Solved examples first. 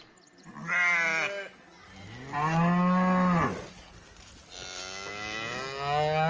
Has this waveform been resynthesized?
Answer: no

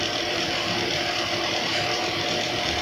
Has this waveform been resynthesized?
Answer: yes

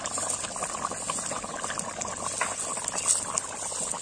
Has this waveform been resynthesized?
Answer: no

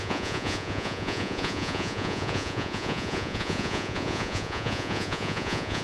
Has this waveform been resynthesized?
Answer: yes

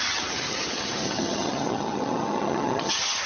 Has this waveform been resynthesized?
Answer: yes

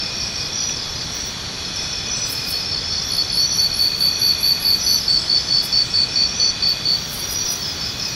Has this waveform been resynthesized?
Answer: no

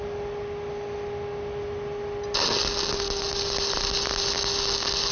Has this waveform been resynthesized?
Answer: no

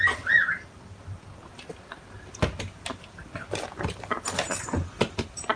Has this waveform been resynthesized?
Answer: no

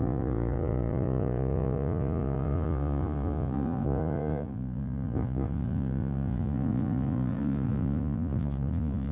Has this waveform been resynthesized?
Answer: yes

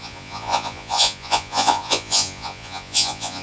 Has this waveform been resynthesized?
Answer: yes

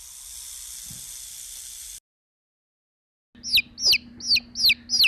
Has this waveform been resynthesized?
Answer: no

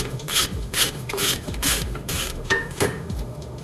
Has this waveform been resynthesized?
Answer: yes